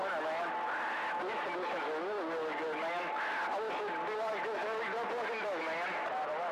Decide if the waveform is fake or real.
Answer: real